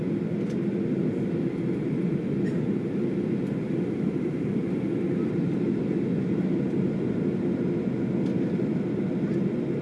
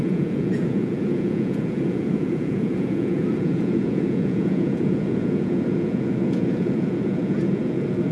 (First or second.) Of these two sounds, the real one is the first